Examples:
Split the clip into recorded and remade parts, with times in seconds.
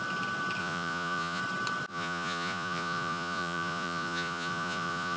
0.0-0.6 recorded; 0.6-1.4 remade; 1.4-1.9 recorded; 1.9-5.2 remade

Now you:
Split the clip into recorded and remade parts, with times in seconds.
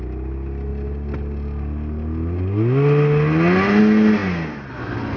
0.0-5.2 recorded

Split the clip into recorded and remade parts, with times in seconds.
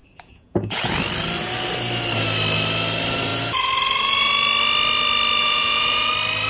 0.0-0.9 remade; 0.9-5.4 recorded; 5.4-6.1 remade; 6.1-6.5 recorded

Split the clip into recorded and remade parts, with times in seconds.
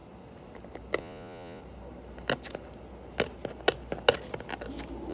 0.0-1.0 recorded; 1.0-1.6 remade; 1.6-5.1 recorded